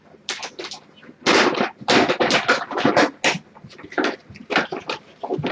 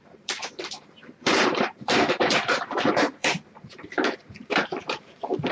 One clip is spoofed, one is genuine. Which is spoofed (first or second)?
second